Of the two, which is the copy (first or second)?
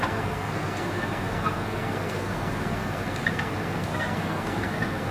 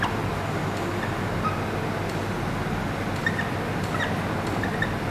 first